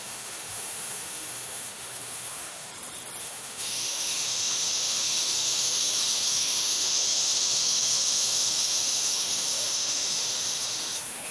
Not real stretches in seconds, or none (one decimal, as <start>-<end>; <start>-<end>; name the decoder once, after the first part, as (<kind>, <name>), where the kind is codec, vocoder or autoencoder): 0.0-2.7 (autoencoder, DAC-VAE); 3.2-11.3